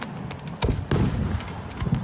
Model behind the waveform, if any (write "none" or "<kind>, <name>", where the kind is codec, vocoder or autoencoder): none